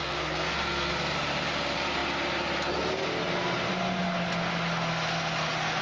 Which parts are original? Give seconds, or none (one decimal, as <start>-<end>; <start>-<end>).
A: 0.9-5.8